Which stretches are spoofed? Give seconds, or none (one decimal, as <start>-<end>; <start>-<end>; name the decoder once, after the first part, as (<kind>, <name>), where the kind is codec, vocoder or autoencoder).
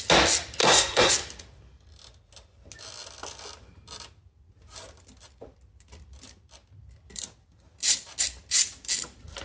0.6-1.1 (codec, SNAC)